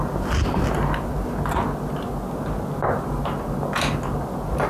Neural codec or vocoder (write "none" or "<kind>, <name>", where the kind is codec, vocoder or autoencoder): none